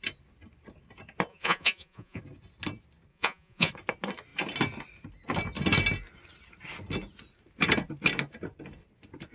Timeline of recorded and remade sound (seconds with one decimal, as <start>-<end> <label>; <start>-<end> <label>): 0.0-1.3 recorded; 1.3-2.2 remade; 2.2-3.1 recorded; 3.1-3.7 remade; 3.7-9.3 recorded